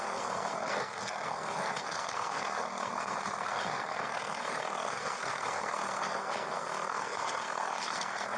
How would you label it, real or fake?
fake